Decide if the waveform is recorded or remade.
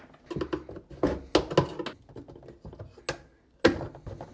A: recorded